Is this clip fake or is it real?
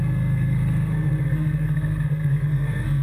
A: fake